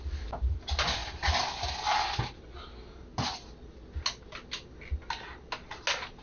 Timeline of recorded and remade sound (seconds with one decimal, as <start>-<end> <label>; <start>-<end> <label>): 0.0-6.2 recorded